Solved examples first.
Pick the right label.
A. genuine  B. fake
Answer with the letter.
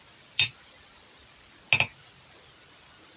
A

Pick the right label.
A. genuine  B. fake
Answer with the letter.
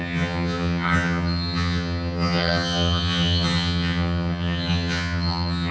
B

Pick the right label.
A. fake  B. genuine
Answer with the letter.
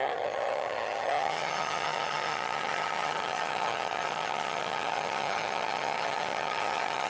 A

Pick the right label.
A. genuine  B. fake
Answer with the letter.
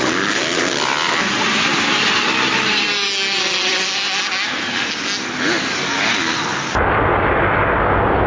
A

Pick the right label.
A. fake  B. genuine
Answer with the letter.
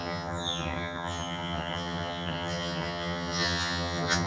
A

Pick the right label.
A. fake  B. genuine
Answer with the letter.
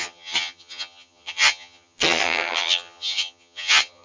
A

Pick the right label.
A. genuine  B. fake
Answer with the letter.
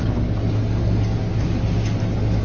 A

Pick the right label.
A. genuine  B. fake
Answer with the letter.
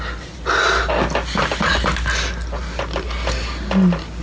A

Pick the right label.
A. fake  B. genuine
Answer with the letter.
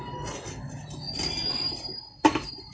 B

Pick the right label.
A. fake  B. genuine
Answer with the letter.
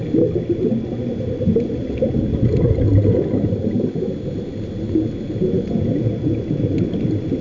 B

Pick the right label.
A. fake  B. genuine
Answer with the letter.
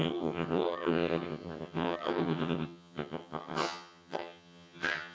A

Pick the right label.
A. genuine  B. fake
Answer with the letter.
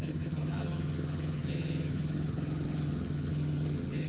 B